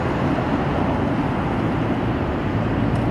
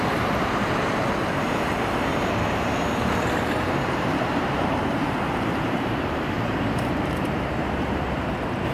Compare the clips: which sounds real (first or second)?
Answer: first